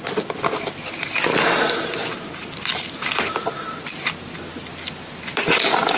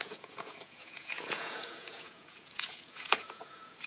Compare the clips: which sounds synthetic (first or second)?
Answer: second